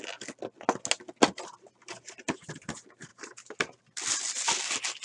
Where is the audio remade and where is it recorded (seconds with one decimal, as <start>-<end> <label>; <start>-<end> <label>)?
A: 0.0-3.1 recorded; 3.1-3.8 remade; 3.8-5.0 recorded